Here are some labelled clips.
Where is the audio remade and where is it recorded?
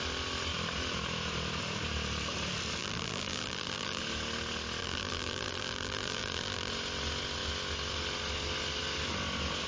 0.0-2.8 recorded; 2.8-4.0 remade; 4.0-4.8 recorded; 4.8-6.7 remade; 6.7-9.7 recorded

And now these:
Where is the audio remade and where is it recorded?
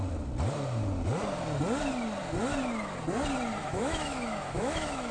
0.0-3.6 recorded; 3.6-5.1 remade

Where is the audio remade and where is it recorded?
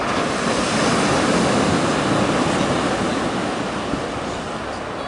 0.0-5.1 recorded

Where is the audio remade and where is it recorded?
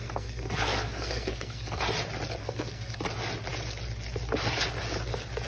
0.0-1.8 remade; 1.8-2.4 recorded; 2.4-3.0 remade; 3.0-5.5 recorded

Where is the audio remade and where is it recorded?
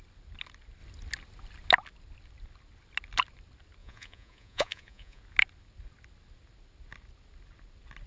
0.0-3.8 recorded; 3.8-5.2 remade; 5.2-8.1 recorded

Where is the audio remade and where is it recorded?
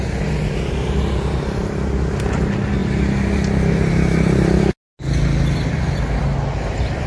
0.0-7.1 recorded